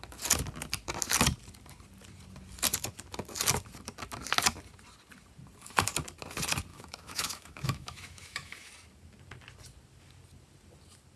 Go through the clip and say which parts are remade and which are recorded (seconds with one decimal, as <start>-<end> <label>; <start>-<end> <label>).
0.0-6.7 recorded; 6.7-8.7 remade; 8.7-11.2 recorded

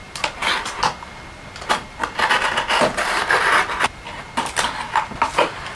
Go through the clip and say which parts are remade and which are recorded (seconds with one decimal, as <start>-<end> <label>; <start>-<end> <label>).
0.0-5.8 recorded

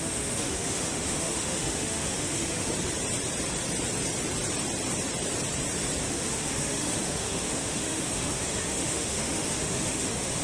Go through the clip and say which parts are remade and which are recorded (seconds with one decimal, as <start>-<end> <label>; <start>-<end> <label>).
0.0-2.7 remade; 2.7-6.0 recorded; 6.0-10.4 remade

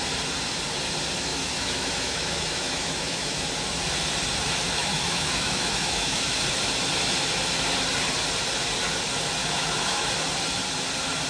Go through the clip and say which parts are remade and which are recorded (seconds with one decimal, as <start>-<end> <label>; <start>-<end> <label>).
0.0-1.3 recorded; 1.3-3.5 remade; 3.5-4.8 recorded; 4.8-6.3 remade; 6.3-9.4 recorded; 9.4-10.1 remade; 10.1-11.3 recorded

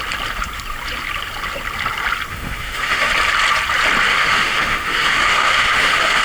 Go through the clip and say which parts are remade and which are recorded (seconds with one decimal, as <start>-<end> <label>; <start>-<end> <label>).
0.0-2.3 recorded; 2.3-3.1 remade; 3.1-4.1 recorded; 4.1-6.2 remade